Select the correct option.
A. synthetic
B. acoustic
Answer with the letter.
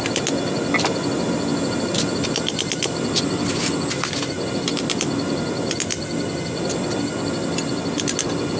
B